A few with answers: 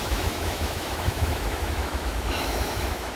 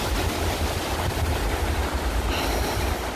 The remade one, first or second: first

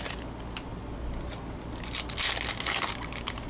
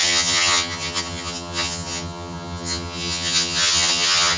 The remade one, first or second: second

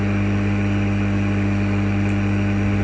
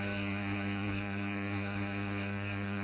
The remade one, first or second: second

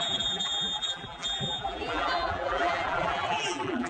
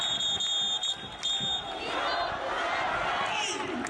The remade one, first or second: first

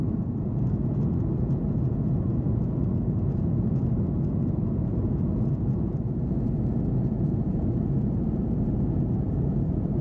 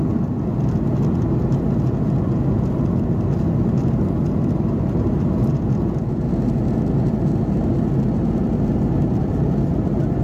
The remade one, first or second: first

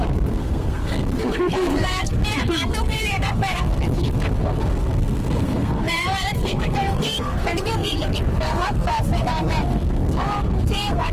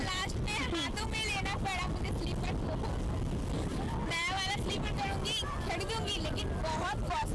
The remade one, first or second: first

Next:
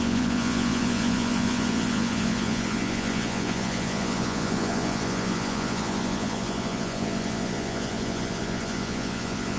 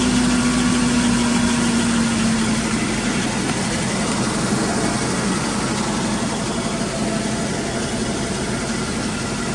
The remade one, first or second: first